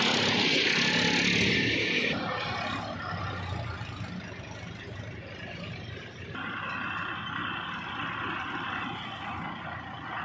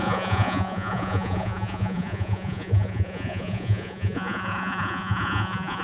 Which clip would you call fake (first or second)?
second